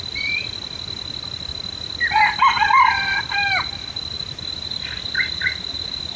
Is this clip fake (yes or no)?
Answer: no